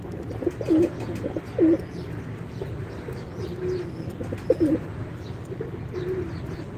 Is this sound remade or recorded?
recorded